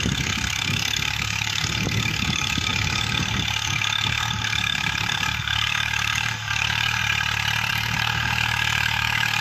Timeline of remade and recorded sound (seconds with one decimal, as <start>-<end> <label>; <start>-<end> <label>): 0.0-7.0 remade; 7.0-7.7 recorded; 7.7-9.4 remade